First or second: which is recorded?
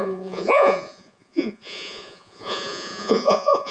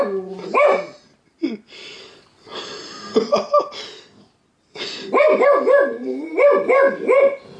second